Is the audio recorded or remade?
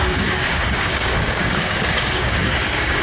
remade